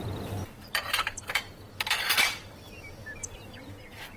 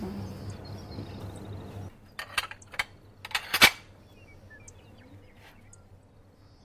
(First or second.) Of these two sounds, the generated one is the first